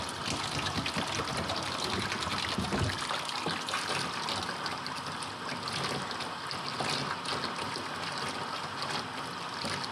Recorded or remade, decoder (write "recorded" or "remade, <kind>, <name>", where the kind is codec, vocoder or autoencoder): recorded